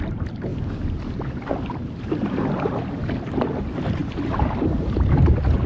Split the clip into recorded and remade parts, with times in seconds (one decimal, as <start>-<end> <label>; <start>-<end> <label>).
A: 0.0-4.0 recorded; 4.0-4.9 remade; 4.9-5.7 recorded